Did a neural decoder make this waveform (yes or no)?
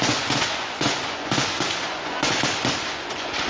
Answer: yes